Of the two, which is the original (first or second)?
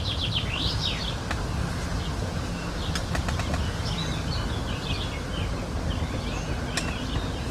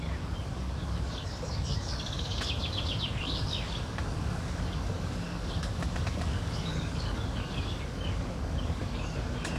first